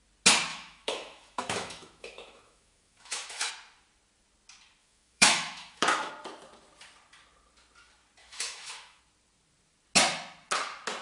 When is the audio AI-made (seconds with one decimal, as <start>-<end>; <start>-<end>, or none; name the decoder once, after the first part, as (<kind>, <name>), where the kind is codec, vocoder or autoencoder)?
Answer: 0.5-3.5 (autoencoder, DAC-VAE); 4.8-6.1; 8.2-9.0